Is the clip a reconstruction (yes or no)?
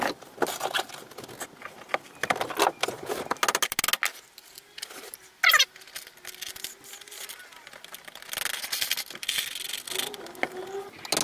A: no